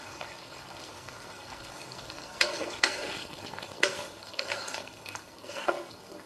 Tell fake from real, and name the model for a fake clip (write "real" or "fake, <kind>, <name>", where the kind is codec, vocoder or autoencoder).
fake, codec, SNAC